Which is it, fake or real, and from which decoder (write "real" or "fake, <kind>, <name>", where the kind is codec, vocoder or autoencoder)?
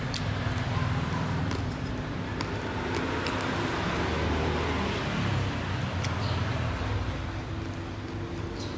real